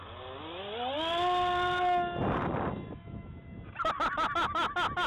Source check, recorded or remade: recorded